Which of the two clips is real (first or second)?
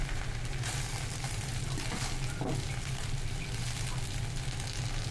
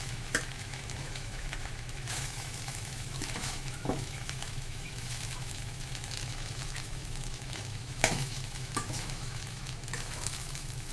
first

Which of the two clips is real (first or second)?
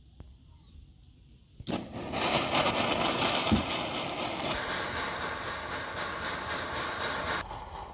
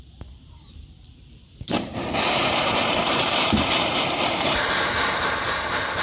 first